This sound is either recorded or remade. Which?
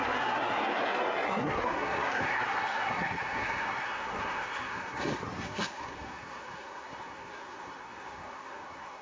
remade